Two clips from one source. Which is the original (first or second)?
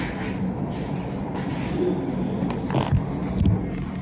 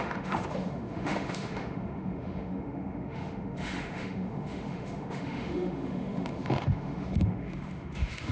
first